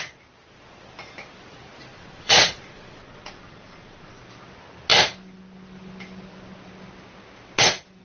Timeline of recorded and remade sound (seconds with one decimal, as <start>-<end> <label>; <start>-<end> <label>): 0.0-1.9 recorded; 1.9-4.2 remade; 4.2-8.0 recorded

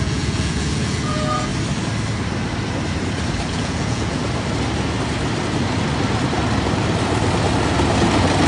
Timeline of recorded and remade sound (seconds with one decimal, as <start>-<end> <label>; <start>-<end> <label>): 0.0-1.5 remade; 1.5-3.5 recorded; 3.5-4.2 remade; 4.2-8.5 recorded

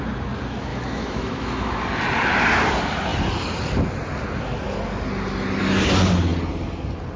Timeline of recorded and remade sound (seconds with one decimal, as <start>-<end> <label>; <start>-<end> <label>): 0.0-0.7 recorded; 0.7-1.7 remade; 1.7-7.2 recorded

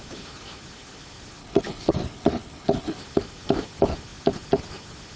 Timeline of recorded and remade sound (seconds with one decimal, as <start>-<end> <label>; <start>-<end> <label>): 0.0-1.4 recorded; 1.4-3.0 remade; 3.0-5.2 recorded

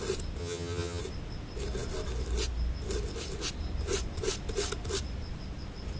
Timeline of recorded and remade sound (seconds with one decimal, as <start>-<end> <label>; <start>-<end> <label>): 0.0-0.4 recorded; 0.4-1.0 remade; 1.0-6.0 recorded

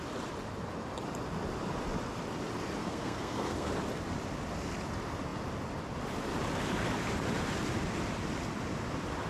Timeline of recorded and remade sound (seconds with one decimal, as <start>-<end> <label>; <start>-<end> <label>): 0.0-2.8 recorded; 2.8-3.7 remade; 3.7-9.3 recorded

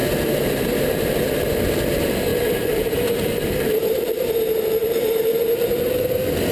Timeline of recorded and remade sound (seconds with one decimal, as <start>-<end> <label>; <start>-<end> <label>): 0.0-1.1 remade; 1.1-2.3 recorded; 2.3-4.3 remade; 4.3-4.8 recorded; 4.8-5.3 remade; 5.3-6.5 recorded